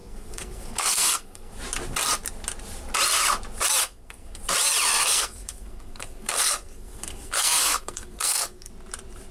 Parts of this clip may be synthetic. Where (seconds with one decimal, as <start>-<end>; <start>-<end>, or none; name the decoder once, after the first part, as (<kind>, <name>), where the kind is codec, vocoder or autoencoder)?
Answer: 0.0-1.5 (codec, SNAC); 3.8-4.4; 5.0-8.7